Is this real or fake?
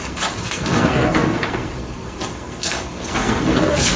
fake